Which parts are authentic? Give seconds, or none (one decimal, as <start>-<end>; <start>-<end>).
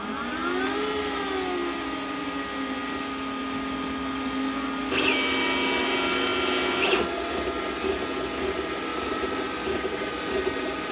0.0-8.9